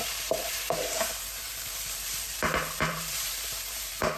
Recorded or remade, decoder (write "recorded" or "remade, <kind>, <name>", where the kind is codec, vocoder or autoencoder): remade, vocoder, BigVGAN v2